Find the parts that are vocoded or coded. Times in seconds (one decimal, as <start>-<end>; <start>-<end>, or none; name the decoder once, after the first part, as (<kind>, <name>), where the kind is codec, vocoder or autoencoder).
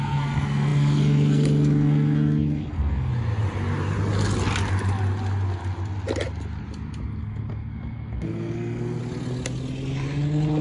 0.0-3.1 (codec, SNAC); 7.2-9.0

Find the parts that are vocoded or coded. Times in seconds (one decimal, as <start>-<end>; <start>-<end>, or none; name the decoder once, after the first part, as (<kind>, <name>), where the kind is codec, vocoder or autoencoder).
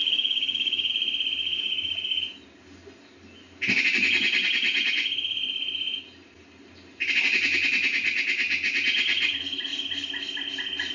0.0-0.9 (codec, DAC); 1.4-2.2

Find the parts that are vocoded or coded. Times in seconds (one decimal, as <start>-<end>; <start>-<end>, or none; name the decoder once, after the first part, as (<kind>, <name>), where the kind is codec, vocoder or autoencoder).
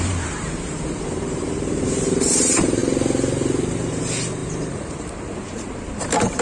0.0-2.8 (vocoder, BigVGAN v2); 3.7-6.4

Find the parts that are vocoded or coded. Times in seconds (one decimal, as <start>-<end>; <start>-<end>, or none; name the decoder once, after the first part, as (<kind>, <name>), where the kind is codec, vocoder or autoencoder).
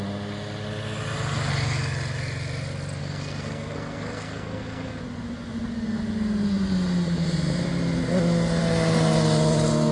3.0-5.0 (codec, SNAC)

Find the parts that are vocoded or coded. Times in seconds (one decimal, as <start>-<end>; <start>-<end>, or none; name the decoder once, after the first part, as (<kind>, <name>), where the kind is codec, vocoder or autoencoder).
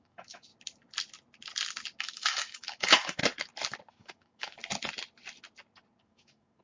0.0-0.5 (autoencoder, DAC-VAE); 2.0-3.2; 3.9-4.6; 6.0-6.6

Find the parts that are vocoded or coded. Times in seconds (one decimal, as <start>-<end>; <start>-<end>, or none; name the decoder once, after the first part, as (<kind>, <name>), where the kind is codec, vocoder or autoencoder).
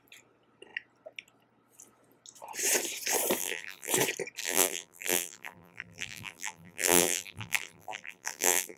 3.4-3.9 (vocoder, BigVGAN v2); 4.4-8.8